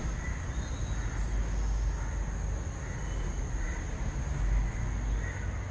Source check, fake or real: real